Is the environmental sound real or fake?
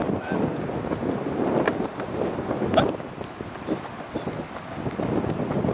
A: real